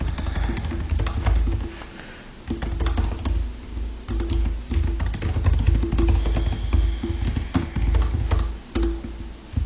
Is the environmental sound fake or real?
real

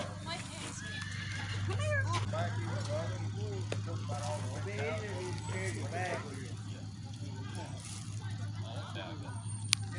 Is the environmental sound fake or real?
real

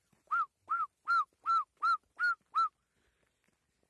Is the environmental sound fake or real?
real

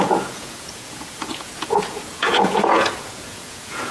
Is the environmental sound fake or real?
fake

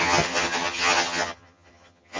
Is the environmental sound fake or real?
fake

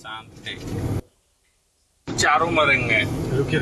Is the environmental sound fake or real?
real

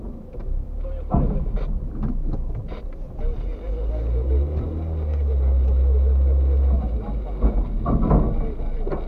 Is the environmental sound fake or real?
real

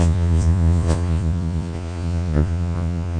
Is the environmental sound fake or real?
fake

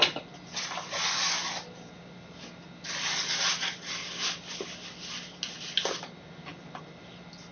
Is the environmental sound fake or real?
real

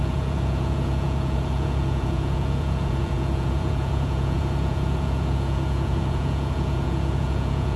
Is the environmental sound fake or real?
fake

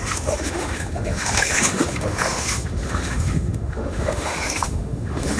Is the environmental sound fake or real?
fake